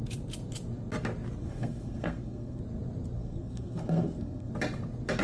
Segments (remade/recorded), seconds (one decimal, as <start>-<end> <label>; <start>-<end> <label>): 0.0-1.4 recorded; 1.4-2.6 remade; 2.6-3.2 recorded; 3.2-4.5 remade; 4.5-5.2 recorded